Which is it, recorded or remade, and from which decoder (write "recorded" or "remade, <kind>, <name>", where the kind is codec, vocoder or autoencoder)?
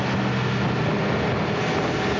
recorded